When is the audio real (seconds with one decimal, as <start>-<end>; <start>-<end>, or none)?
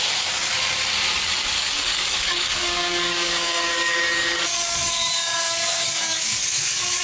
0.5-1.2